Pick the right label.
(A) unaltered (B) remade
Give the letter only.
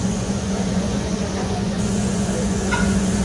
B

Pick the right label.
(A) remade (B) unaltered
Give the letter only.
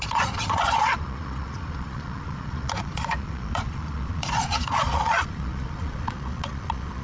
A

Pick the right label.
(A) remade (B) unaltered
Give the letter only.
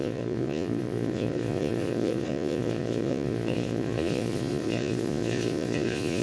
A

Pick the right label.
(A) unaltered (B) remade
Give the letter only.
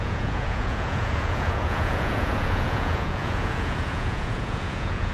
B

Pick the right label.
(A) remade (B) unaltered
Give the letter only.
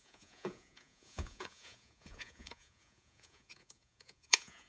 A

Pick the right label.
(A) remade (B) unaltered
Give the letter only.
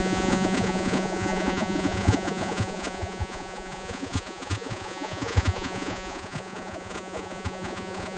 A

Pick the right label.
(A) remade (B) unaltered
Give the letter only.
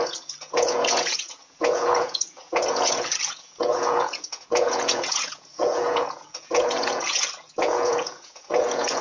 A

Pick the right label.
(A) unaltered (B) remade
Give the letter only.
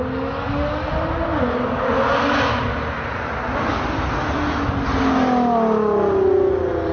A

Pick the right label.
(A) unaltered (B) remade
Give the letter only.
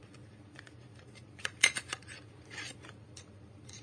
B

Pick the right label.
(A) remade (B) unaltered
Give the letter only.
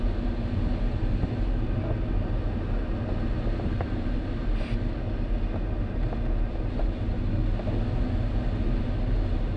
B